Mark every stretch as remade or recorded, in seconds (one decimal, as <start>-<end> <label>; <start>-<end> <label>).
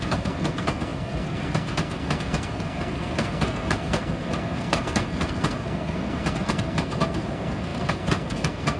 0.0-8.8 remade